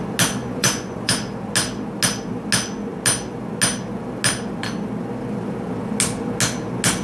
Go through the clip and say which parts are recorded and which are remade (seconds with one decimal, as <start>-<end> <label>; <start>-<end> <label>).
0.0-0.4 recorded; 0.4-1.1 remade; 1.1-7.0 recorded